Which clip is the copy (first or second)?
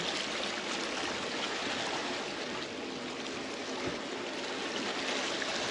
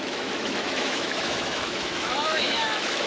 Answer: second